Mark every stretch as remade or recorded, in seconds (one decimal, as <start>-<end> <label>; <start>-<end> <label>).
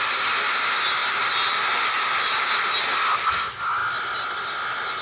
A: 0.0-5.0 recorded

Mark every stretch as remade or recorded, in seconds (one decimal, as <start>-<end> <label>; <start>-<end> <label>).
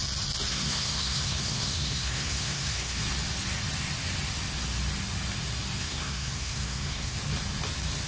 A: 0.0-0.5 recorded; 0.5-3.0 remade; 3.0-5.8 recorded; 5.8-7.2 remade; 7.2-8.1 recorded